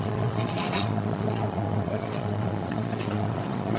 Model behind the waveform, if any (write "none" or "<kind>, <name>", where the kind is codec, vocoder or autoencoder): vocoder, Vocos